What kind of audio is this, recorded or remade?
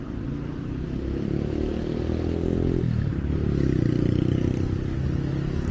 recorded